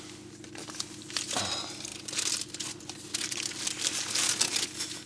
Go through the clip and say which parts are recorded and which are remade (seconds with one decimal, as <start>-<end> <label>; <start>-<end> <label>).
0.0-5.1 recorded